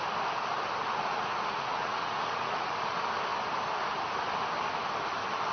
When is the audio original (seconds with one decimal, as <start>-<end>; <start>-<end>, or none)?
0.0-0.8; 2.7-5.5